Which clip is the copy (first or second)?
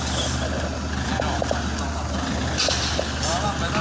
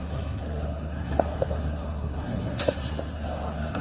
second